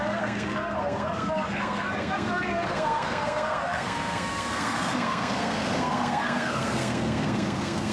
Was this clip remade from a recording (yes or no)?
yes